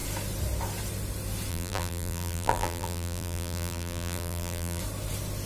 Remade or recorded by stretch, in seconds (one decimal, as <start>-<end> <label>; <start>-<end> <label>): 0.0-1.5 recorded; 1.5-4.8 remade; 4.8-5.5 recorded